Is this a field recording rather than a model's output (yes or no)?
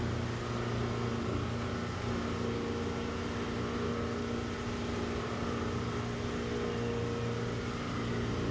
yes